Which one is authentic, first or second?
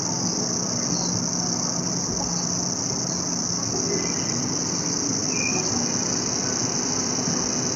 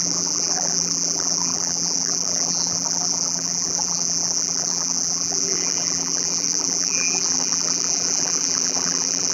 first